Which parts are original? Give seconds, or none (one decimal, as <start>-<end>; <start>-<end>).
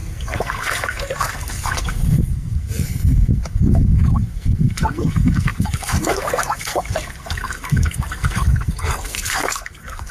none